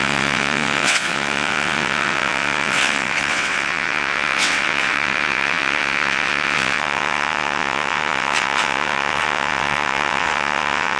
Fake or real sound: fake